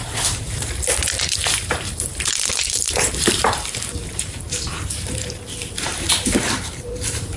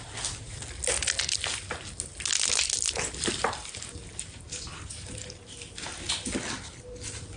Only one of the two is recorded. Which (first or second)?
second